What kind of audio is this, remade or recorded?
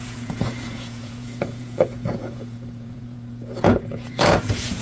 remade